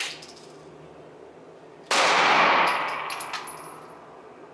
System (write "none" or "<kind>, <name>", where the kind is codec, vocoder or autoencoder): none